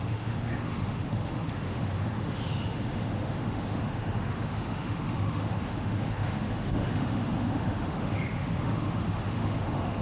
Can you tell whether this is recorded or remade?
remade